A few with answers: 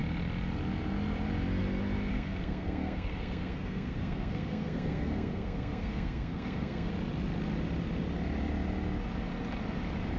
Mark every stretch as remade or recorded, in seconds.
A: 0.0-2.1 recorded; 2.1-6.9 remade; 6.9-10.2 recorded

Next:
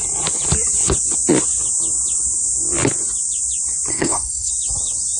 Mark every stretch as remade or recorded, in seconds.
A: 0.0-3.9 recorded; 3.9-4.5 remade; 4.5-5.2 recorded

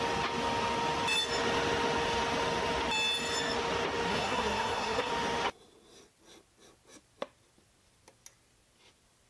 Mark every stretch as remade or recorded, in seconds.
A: 0.0-4.1 recorded; 4.1-5.1 remade; 5.1-9.3 recorded

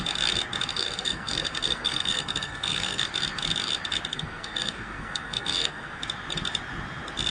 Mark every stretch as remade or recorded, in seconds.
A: 0.0-0.7 recorded; 0.7-3.1 remade; 3.1-4.1 recorded; 4.1-6.0 remade; 6.0-7.3 recorded

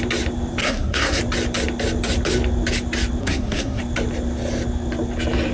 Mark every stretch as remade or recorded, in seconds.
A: 0.0-0.6 recorded; 0.6-1.2 remade; 1.2-3.2 recorded; 3.2-3.8 remade; 3.8-5.5 recorded

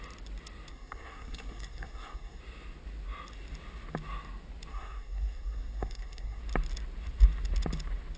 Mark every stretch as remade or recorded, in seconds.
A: 0.0-0.7 recorded; 0.7-2.4 remade; 2.4-4.7 recorded; 4.7-6.4 remade; 6.4-8.2 recorded

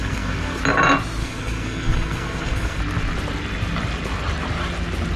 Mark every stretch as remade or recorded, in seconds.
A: 0.0-0.6 remade; 0.6-1.2 recorded; 1.2-2.8 remade; 2.8-5.2 recorded